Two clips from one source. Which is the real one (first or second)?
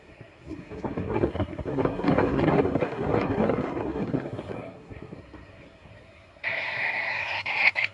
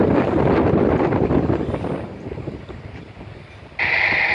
second